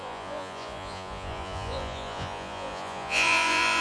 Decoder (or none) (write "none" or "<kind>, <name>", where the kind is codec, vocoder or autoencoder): vocoder, Vocos